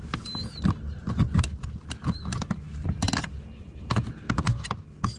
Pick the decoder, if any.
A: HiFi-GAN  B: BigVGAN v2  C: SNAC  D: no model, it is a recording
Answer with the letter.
D